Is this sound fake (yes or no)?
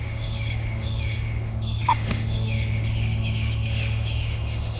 yes